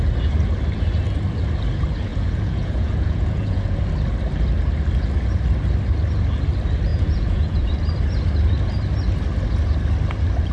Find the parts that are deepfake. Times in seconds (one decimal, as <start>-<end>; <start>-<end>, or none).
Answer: 2.1-3.8; 6.9-7.7